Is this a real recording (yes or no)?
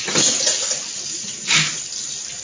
yes